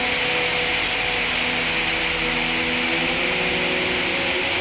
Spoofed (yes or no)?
no